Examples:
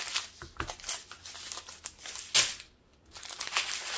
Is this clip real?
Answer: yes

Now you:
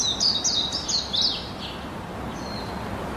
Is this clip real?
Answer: yes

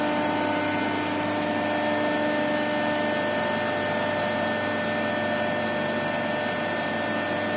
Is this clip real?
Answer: yes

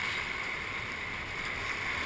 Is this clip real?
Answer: yes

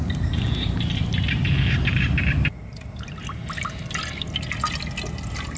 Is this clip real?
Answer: yes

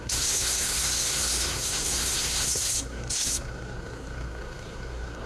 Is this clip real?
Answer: no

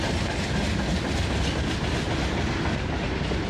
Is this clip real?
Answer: yes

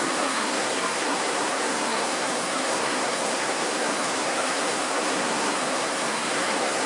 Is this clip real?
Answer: no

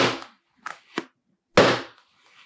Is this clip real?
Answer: yes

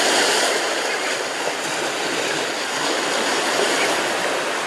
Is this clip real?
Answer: yes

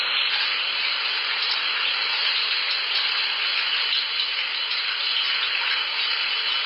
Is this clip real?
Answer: yes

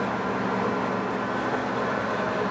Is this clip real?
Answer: yes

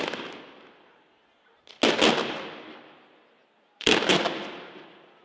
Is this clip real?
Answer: yes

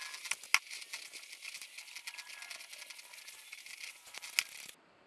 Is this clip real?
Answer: yes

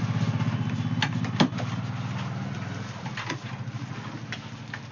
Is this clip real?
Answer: yes